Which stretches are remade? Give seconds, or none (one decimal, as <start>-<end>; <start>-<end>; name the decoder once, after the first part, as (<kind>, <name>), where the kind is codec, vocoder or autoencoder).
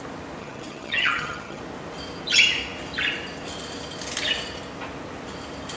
0.4-1.6 (vocoder, HiFi-GAN)